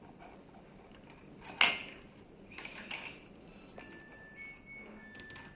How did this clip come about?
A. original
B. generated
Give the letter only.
A